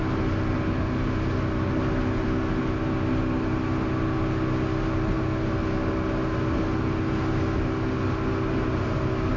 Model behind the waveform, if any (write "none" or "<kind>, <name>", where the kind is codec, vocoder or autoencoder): none